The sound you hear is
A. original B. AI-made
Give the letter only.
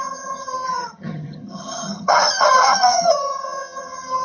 B